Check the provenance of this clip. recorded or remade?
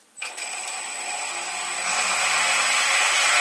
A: recorded